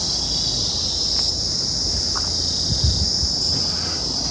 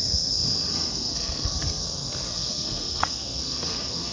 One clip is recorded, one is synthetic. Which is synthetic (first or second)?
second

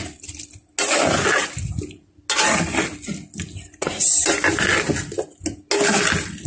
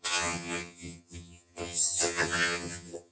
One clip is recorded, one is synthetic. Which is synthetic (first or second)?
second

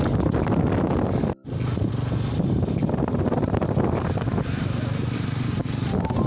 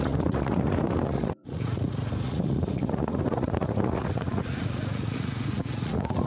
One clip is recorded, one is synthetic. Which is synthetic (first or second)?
second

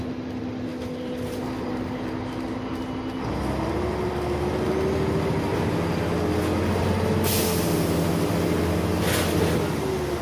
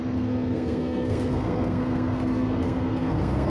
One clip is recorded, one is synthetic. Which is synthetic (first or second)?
second